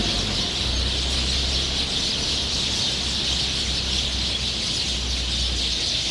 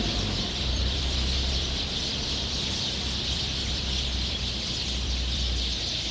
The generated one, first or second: second